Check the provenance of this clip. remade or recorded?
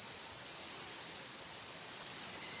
recorded